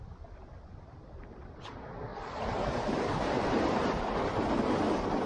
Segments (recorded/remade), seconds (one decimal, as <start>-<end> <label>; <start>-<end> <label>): 0.0-2.1 recorded; 2.1-4.1 remade; 4.1-5.3 recorded